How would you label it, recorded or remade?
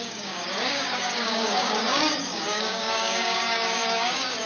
remade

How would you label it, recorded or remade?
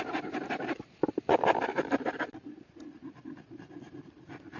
recorded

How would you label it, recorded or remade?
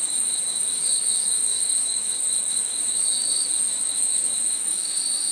remade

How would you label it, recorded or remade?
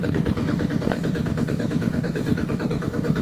remade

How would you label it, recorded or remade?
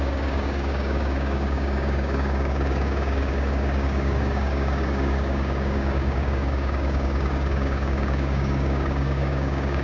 remade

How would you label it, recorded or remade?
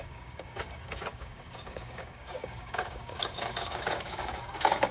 remade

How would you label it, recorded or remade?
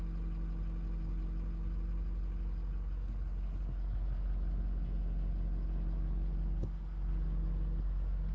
recorded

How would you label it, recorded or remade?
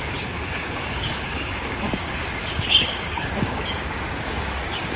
remade